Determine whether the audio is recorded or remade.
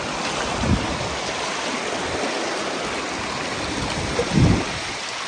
recorded